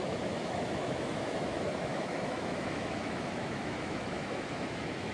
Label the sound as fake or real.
fake